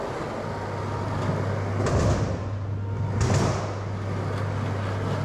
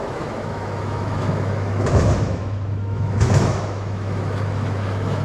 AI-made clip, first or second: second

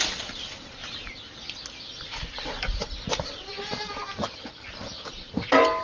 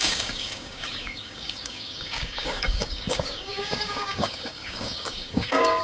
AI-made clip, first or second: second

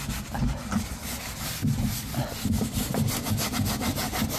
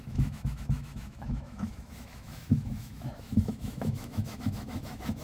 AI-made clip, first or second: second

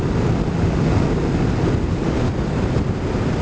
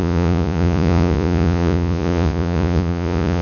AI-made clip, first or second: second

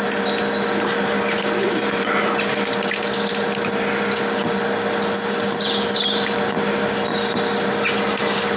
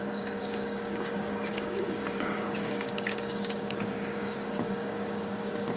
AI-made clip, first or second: second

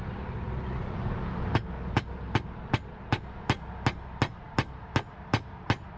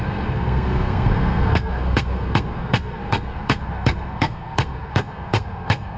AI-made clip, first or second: second